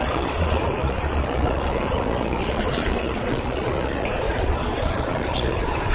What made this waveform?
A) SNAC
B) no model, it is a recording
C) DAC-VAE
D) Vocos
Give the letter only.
D